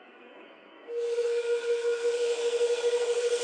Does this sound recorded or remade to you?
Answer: remade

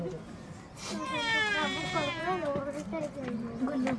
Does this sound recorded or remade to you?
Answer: recorded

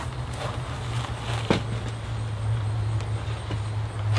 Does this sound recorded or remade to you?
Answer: recorded